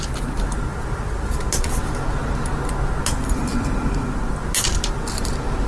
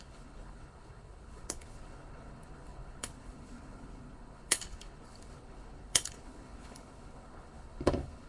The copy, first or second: second